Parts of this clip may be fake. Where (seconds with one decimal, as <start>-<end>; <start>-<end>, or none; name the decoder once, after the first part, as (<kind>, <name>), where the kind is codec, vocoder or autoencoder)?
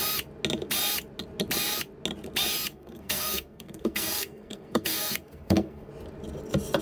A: 2.7-5.9 (codec, SNAC)